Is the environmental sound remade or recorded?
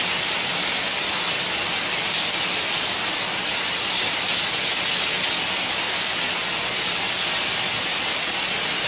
recorded